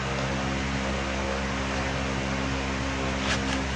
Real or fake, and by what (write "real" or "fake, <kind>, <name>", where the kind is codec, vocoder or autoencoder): real